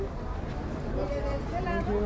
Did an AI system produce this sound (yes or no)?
no